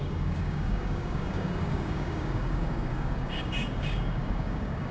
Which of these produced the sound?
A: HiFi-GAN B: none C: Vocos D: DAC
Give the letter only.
D